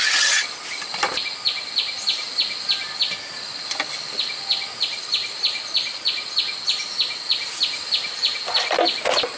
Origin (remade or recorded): recorded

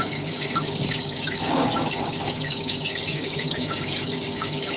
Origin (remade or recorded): remade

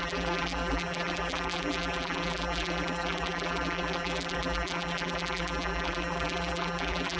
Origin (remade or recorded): remade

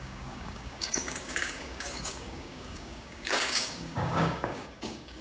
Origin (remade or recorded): remade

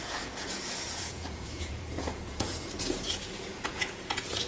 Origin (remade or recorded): remade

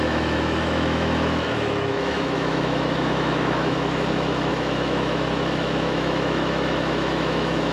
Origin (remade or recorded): remade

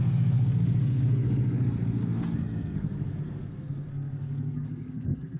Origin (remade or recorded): remade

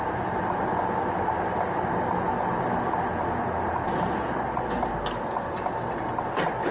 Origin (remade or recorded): recorded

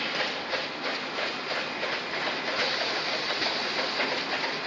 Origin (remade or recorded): recorded